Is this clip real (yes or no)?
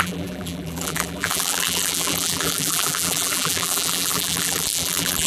no